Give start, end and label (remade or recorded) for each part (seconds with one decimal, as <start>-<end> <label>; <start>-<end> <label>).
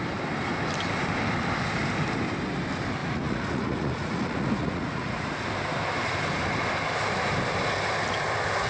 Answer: 0.0-3.0 recorded; 3.0-5.4 remade; 5.4-8.7 recorded